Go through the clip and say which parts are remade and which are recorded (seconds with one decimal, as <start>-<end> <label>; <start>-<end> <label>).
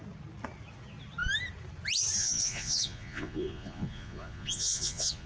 0.0-2.2 recorded; 2.2-5.3 remade